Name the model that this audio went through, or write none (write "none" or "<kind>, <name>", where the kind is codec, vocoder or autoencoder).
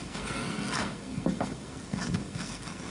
codec, SNAC